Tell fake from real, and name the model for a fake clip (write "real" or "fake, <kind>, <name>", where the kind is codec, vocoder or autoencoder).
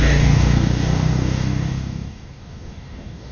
fake, codec, DAC